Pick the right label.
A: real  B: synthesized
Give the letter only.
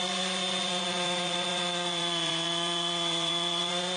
B